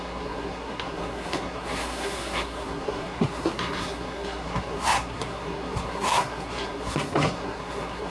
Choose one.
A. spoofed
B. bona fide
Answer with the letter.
A